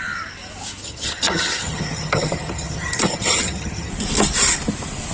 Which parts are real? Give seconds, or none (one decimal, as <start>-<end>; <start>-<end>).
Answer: 0.0-0.8; 3.9-5.1